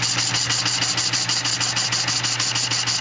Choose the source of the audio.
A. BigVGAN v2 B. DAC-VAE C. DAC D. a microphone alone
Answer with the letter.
D